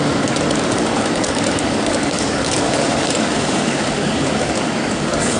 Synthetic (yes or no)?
yes